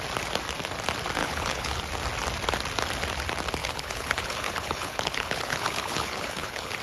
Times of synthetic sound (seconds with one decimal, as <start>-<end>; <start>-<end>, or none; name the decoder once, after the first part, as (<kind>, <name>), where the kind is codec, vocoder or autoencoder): 1.2-1.8 (codec, HILCodec); 3.6-6.8